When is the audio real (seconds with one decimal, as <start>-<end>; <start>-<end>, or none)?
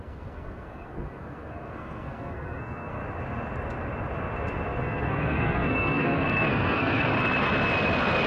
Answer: 3.0-4.8; 7.1-8.3